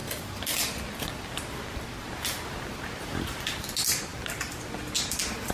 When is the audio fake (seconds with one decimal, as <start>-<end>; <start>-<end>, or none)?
none